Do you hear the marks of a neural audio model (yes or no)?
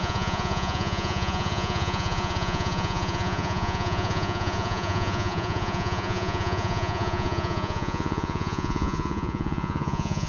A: yes